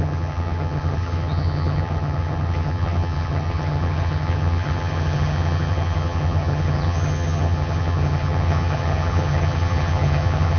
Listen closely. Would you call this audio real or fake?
fake